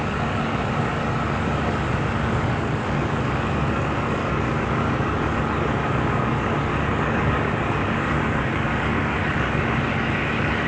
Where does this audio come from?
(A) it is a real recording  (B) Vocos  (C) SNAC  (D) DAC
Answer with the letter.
D